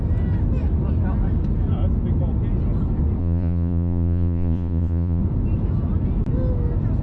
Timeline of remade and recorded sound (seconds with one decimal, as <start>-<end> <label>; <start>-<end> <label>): 0.0-3.2 recorded; 3.2-5.2 remade; 5.2-7.0 recorded